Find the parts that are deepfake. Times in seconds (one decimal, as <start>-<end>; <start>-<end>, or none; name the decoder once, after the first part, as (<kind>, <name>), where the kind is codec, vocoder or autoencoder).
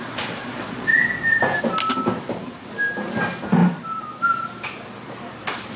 0.0-0.9 (vocoder, BigVGAN v2); 1.6-3.6; 4.2-5.8